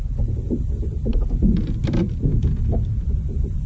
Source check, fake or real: fake